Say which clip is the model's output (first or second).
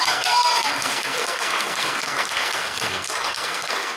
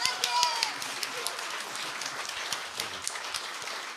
first